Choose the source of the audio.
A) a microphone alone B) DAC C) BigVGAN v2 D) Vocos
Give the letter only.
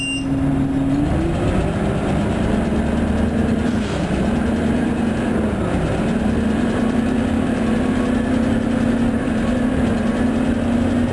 A